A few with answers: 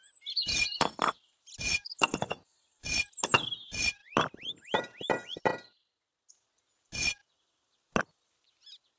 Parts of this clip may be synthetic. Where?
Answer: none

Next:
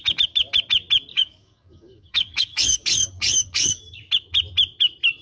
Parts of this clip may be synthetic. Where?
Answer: 1.1-3.8 (codec, DAC)

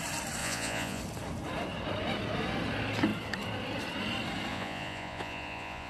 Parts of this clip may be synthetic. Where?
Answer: 0.4-1.0 (vocoder, Vocos); 4.5-5.9

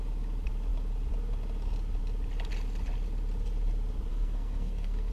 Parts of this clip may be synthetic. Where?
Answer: 4.1-5.1 (codec, SNAC)